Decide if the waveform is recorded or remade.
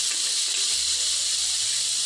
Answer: remade